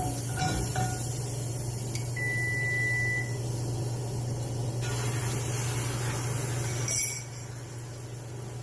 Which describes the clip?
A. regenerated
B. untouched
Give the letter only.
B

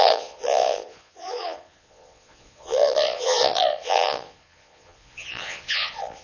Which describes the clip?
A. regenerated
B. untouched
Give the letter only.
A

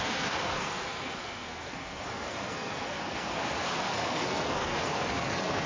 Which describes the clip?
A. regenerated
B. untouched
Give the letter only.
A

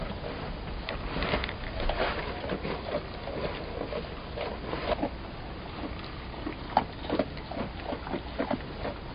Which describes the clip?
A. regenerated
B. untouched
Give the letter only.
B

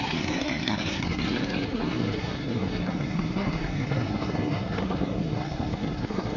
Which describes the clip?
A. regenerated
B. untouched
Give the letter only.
A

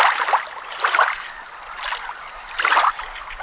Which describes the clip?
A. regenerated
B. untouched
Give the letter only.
B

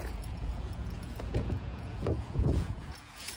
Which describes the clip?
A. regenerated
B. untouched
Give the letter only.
A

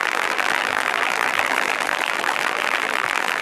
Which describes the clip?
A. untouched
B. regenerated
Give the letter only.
B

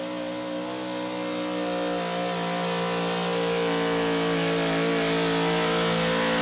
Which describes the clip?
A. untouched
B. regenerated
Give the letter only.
A